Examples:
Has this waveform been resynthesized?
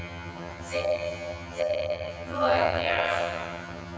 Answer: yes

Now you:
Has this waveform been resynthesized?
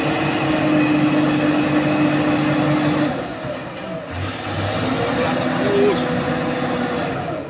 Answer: no